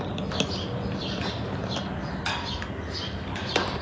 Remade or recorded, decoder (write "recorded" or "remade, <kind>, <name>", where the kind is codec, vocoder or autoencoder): recorded